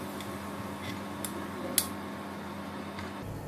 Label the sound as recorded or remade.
recorded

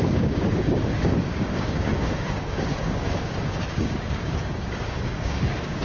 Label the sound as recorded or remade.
remade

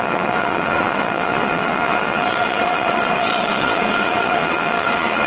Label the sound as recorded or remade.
remade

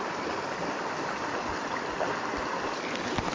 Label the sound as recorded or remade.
recorded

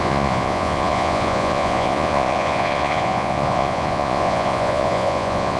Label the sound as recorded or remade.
remade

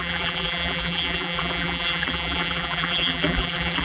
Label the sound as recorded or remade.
remade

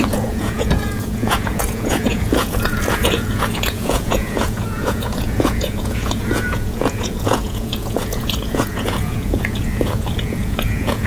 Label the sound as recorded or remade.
remade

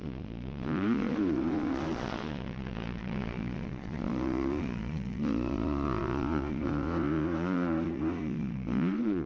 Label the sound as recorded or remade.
remade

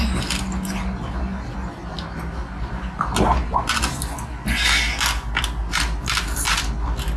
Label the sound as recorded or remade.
recorded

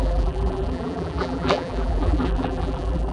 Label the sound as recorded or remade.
remade